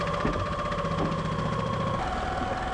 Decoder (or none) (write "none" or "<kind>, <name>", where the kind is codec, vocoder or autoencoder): none